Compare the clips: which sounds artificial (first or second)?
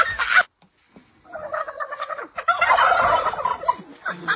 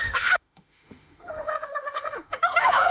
second